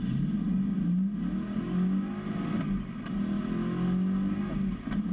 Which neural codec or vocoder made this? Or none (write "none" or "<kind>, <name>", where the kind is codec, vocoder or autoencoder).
none